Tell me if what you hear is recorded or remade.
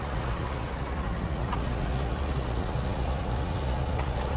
remade